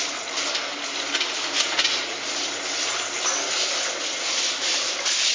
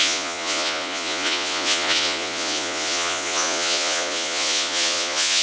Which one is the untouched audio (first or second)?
first